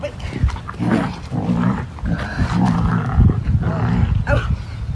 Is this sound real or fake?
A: real